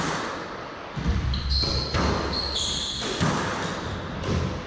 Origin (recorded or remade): recorded